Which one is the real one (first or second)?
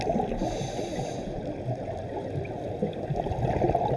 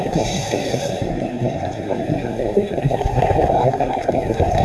first